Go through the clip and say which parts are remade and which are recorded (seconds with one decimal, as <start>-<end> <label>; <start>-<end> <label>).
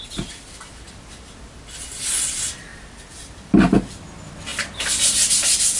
0.0-5.8 recorded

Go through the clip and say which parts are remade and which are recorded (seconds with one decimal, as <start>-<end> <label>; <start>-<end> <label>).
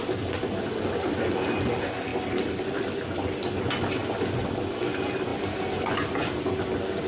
0.0-7.1 recorded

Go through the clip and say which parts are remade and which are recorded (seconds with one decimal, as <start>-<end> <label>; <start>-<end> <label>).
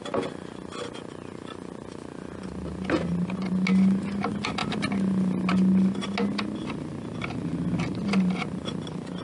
0.0-9.2 recorded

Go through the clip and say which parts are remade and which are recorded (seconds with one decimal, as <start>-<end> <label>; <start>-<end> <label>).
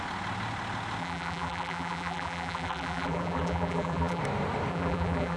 0.0-1.0 recorded; 1.0-4.2 remade; 4.2-4.7 recorded; 4.7-5.4 remade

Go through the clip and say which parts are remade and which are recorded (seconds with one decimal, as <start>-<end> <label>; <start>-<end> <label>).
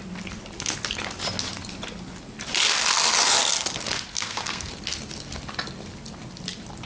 0.0-4.1 recorded; 4.1-4.7 remade; 4.7-6.9 recorded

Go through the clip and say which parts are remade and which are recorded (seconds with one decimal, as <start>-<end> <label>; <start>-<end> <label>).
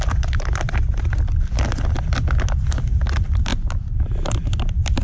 0.0-5.0 recorded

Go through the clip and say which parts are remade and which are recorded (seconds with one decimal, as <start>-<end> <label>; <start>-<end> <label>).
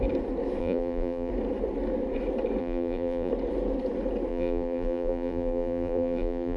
0.0-0.6 recorded; 0.6-1.3 remade; 1.3-2.6 recorded; 2.6-3.3 remade; 3.3-4.3 recorded; 4.3-6.6 remade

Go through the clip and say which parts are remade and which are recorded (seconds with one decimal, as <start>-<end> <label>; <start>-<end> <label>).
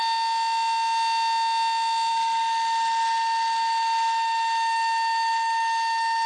0.0-2.1 recorded; 2.1-6.3 remade